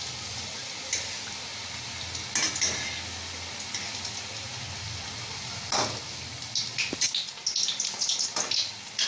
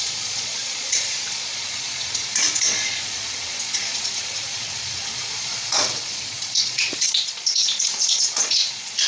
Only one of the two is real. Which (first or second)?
first